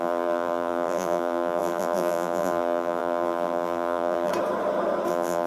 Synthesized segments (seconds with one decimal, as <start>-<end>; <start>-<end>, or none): 0.0-4.3; 5.1-5.5

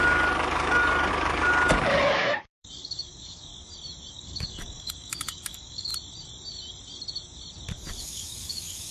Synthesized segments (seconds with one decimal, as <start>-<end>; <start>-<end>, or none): 0.0-3.5; 4.1-5.9; 8.0-8.9

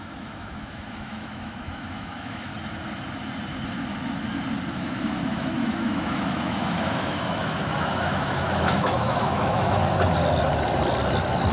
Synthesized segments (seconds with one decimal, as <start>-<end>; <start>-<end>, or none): 0.0-2.5; 4.7-9.8